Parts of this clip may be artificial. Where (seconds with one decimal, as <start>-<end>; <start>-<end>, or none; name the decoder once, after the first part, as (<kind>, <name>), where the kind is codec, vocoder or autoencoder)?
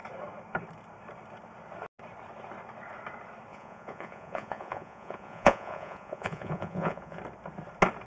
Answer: 3.5-7.2 (vocoder, Vocos)